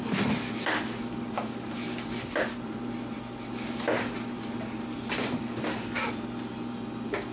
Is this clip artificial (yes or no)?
no